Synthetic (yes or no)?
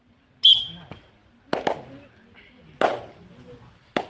no